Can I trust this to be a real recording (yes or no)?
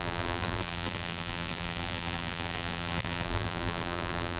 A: no